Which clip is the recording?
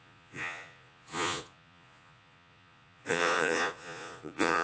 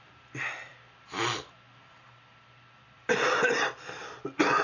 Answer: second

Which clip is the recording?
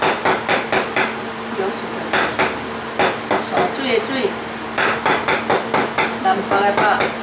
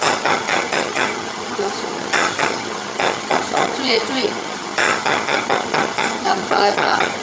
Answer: first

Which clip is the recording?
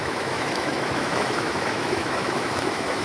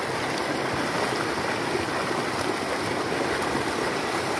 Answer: second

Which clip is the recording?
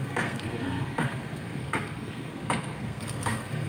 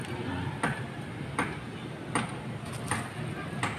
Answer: second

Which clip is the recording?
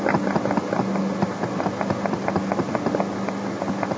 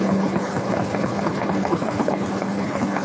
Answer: first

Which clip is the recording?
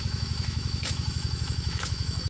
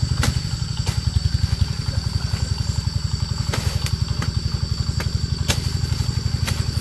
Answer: second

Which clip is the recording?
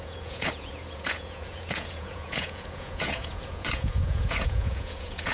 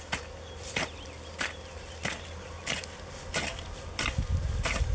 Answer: second